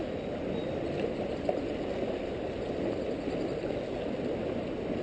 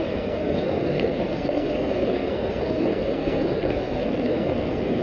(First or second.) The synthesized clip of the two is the second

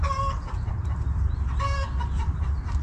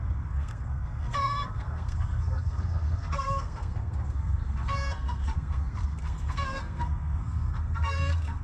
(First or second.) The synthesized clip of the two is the second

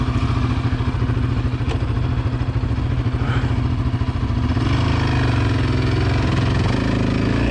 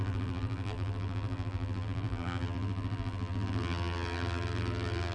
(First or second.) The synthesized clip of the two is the second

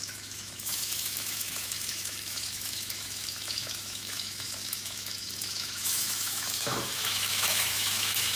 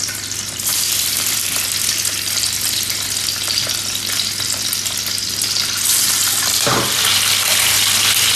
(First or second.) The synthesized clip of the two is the first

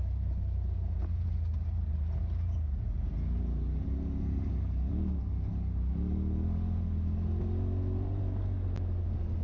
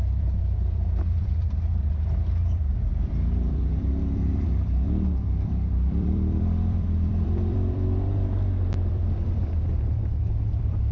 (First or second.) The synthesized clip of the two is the second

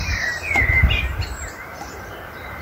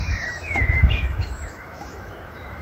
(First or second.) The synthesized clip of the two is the second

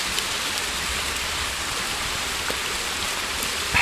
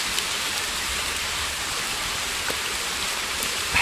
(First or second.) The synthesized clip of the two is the second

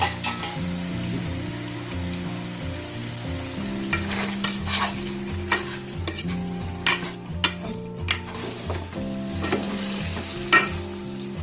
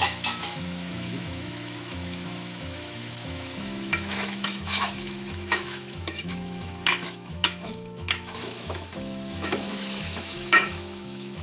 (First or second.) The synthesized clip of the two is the second